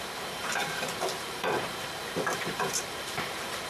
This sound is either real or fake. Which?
fake